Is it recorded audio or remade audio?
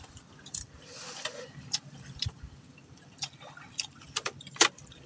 remade